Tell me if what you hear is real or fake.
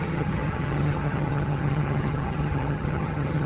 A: fake